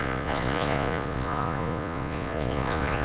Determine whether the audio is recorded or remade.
remade